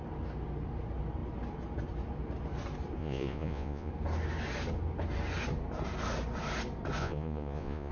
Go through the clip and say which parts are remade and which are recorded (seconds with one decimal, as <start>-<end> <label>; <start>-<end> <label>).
0.0-3.0 recorded; 3.0-3.9 remade; 3.9-7.0 recorded; 7.0-7.9 remade